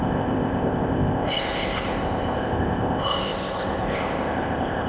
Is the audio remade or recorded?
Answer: remade